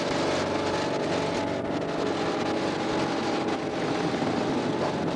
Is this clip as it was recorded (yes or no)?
yes